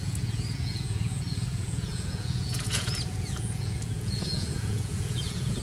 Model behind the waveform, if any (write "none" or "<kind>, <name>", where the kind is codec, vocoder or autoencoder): vocoder, Vocos